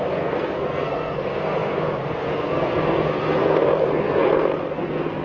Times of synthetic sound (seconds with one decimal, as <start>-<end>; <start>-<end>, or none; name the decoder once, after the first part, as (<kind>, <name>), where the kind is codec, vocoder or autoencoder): 0.0-5.2 (codec, SNAC)